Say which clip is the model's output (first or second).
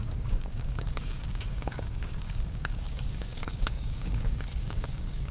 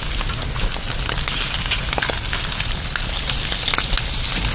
first